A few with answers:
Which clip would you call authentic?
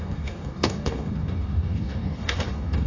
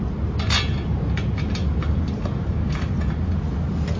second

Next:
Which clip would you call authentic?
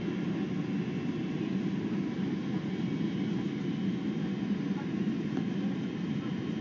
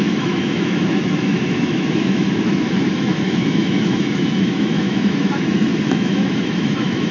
first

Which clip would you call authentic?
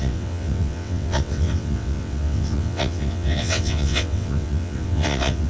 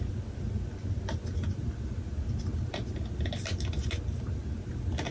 second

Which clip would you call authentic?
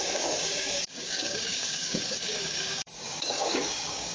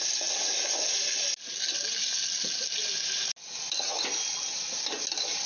second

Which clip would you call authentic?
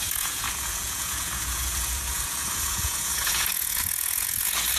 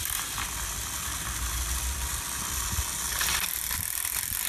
second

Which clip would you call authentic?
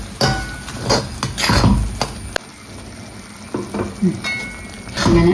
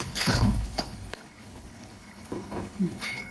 first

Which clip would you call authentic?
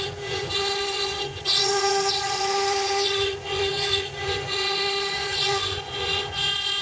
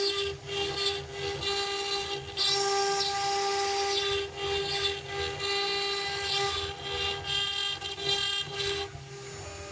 second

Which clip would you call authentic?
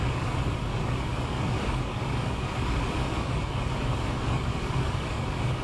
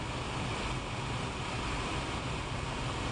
second